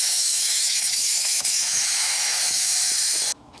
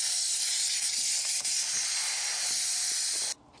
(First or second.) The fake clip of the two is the first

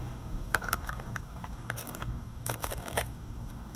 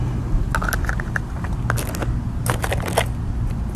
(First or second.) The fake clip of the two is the first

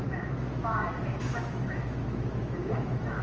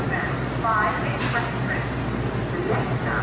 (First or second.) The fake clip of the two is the first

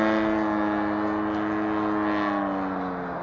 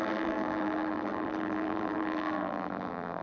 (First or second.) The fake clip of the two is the second